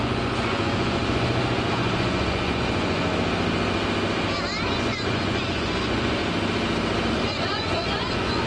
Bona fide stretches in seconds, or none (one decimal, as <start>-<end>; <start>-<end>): 3.0-4.7; 6.2-7.1

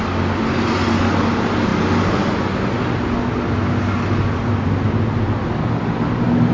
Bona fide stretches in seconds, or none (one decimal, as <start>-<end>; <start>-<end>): 0.0-6.5

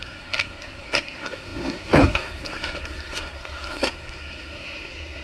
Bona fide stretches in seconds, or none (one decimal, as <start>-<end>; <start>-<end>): none

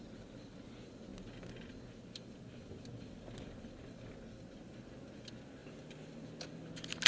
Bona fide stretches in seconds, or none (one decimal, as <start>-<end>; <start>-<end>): 0.0-7.1

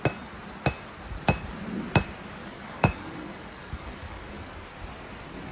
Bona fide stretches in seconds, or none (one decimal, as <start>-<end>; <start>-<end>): 0.0-2.4; 4.5-5.5

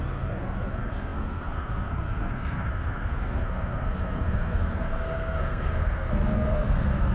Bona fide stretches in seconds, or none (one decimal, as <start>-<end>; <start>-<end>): none

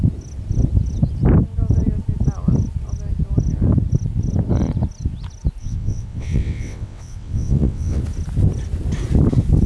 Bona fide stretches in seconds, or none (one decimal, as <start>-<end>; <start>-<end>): 0.0-5.6; 8.0-9.7

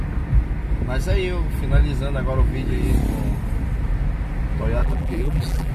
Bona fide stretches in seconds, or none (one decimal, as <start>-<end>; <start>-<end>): 0.0-4.8